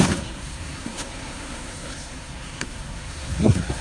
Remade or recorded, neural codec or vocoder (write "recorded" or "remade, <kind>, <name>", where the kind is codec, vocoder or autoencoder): remade, codec, SNAC